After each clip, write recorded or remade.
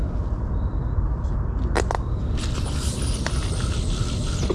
recorded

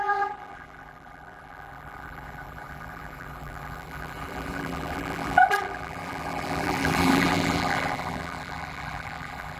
remade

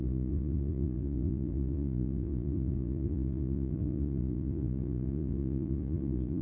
remade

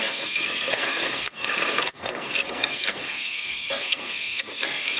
remade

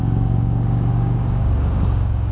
remade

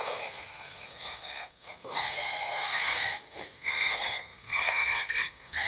remade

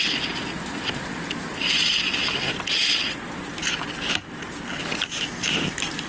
recorded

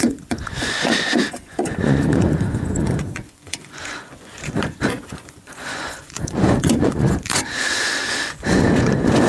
remade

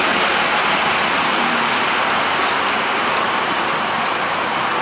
recorded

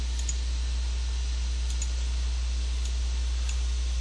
recorded